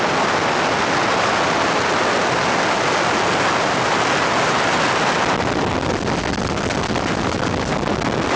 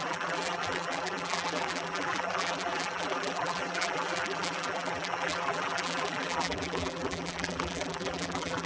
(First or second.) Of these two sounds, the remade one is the second